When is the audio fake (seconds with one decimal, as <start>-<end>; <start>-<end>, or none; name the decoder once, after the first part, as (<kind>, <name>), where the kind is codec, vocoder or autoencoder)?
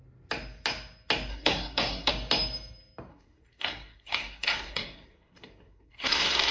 1.3-2.1 (codec, SNAC); 3.1-6.5